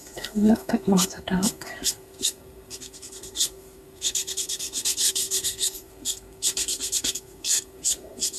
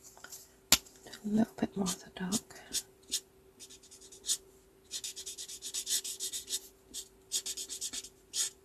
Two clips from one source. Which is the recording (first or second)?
second